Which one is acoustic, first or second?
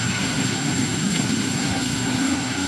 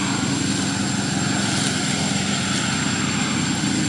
second